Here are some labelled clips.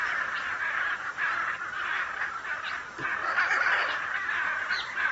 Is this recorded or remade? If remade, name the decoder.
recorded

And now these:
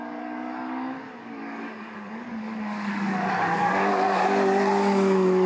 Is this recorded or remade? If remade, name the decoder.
remade, codec, DAC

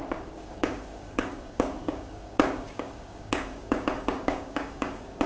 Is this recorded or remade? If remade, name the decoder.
remade, codec, DAC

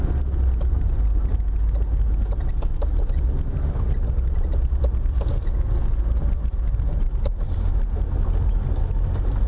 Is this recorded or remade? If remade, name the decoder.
recorded